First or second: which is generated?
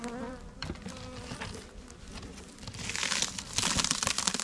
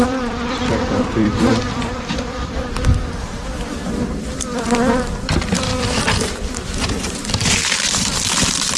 second